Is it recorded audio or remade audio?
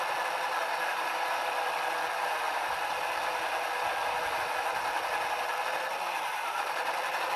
recorded